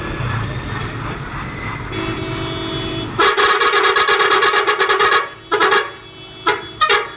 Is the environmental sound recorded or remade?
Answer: recorded